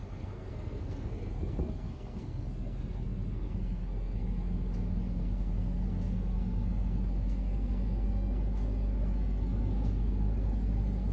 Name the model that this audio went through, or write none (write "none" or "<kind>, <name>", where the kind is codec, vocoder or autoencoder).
codec, SNAC